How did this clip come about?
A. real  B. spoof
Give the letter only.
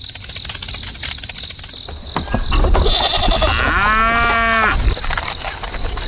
A